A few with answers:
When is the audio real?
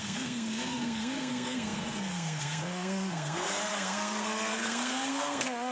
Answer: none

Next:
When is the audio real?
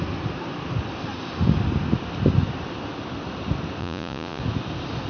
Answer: 0.0-3.8; 4.4-5.1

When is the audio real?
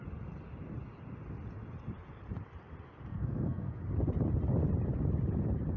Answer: 0.0-3.1; 3.8-5.8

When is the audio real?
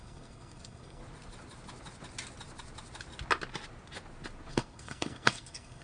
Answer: 1.0-4.5